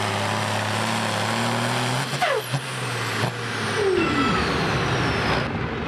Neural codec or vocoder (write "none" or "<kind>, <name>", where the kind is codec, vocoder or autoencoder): none